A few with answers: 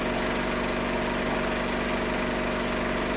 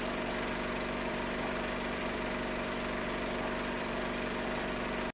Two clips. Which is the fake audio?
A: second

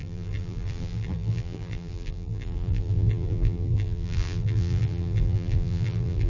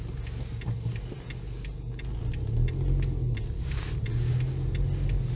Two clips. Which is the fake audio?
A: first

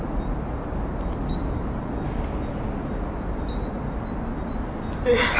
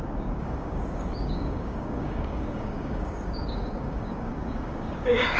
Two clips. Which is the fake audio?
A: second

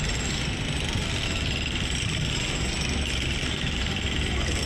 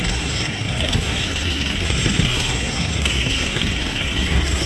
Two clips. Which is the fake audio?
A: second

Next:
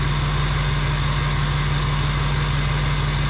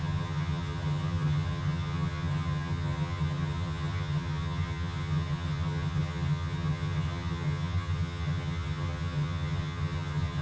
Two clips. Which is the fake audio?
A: second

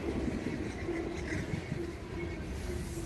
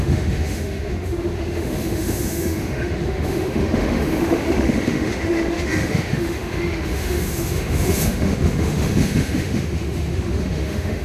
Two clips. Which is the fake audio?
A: second